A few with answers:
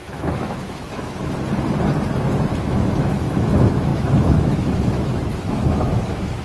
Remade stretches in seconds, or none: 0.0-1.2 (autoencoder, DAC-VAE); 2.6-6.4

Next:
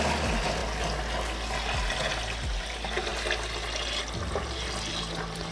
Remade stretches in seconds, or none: none

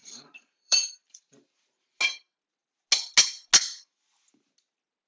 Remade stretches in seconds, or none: 0.0-2.0 (vocoder, BigVGAN v2)

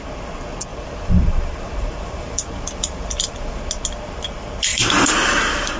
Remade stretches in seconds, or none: 0.7-3.6 (vocoder, BigVGAN v2); 4.7-5.8

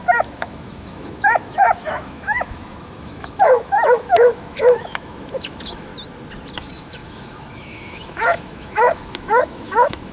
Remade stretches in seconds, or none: 0.0-5.9 (autoencoder, DAC-VAE); 6.5-10.1